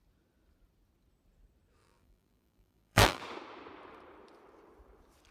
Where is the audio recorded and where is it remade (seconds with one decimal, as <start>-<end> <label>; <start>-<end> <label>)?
0.0-1.8 recorded; 1.8-3.2 remade; 3.2-5.3 recorded